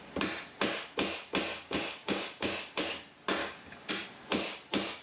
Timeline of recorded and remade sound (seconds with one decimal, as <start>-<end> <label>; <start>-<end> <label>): 0.0-1.5 recorded; 1.5-2.8 remade; 2.8-3.4 recorded; 3.4-3.9 remade; 3.9-5.0 recorded